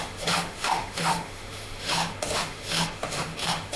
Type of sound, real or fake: fake